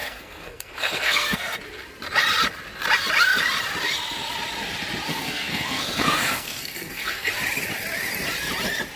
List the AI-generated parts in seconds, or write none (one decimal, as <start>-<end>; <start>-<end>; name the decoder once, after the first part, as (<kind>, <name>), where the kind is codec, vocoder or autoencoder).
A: 0.0-1.6 (codec, SNAC); 5.1-7.3